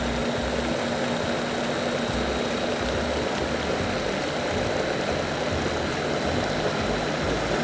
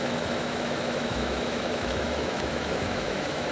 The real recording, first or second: first